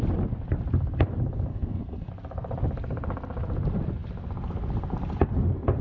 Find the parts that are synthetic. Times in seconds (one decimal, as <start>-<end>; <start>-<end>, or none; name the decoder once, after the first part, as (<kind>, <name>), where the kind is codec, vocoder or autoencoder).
1.5-2.1 (codec, SNAC)